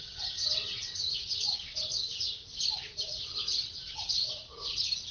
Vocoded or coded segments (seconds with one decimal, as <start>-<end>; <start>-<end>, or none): 0.0-1.9; 2.9-3.3; 3.9-4.4